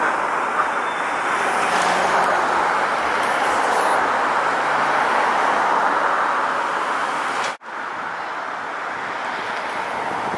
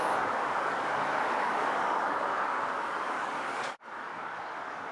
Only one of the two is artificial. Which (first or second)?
second